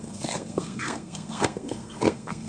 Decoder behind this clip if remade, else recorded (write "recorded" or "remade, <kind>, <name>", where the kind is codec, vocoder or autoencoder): remade, codec, SNAC